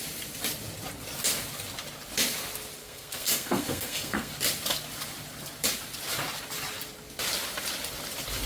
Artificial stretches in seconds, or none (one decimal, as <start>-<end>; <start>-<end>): 2.8-4.3